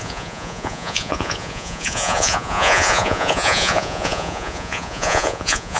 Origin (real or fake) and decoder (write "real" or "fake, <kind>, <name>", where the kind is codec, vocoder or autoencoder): fake, vocoder, Vocos